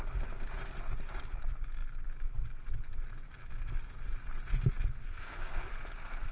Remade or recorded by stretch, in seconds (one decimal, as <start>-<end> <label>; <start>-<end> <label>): 0.0-5.0 recorded; 5.0-5.7 remade; 5.7-6.3 recorded